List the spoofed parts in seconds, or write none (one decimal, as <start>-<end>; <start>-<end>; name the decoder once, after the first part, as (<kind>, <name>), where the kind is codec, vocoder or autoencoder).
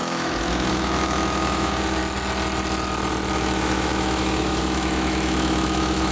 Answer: 0.0-2.0 (autoencoder, DAC-VAE); 3.3-6.1